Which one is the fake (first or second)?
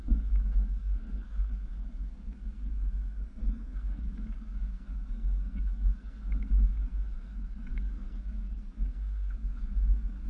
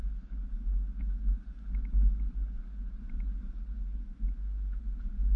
first